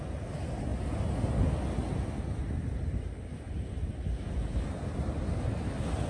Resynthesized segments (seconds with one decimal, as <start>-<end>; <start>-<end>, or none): 2.4-3.7